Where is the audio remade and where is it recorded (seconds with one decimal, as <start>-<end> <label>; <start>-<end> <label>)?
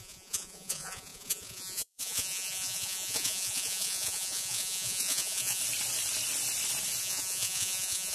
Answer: 0.0-5.6 remade; 5.6-7.0 recorded; 7.0-8.1 remade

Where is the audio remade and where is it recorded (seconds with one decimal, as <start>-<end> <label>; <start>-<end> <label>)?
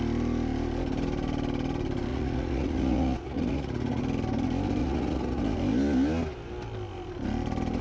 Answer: 0.0-2.1 recorded; 2.1-4.0 remade; 4.0-4.8 recorded; 4.8-5.4 remade; 5.4-7.8 recorded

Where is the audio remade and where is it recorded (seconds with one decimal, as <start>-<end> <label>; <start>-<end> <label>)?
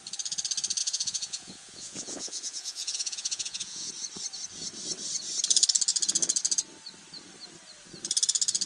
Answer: 0.0-0.8 recorded; 0.8-3.9 remade; 3.9-8.7 recorded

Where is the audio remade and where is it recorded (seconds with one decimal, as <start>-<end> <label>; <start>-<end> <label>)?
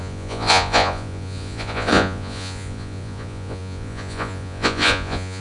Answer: 0.0-5.4 remade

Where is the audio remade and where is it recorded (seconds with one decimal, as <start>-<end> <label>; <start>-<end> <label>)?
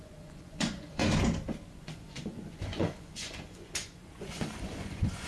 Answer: 0.0-1.0 remade; 1.0-1.7 recorded; 1.7-5.3 remade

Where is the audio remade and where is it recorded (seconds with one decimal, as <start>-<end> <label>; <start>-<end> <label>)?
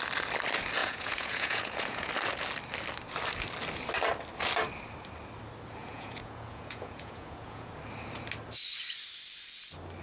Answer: 0.0-0.8 recorded; 0.8-2.1 remade; 2.1-5.8 recorded; 5.8-7.7 remade; 7.7-10.0 recorded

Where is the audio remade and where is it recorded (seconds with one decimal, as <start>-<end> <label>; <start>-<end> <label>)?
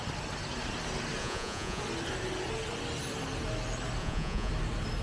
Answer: 0.0-1.2 recorded; 1.2-1.8 remade; 1.8-4.0 recorded; 4.0-4.5 remade; 4.5-5.0 recorded